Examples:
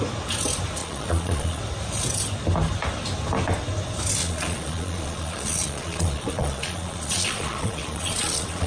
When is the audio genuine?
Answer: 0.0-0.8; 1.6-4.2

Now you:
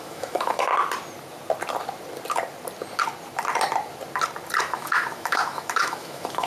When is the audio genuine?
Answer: 0.7-4.6